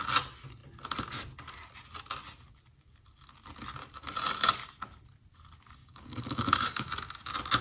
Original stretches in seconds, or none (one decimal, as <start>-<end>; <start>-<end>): 0.0-5.8; 6.9-7.6